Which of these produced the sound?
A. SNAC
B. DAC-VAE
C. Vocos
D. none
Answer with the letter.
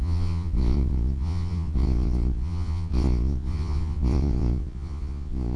C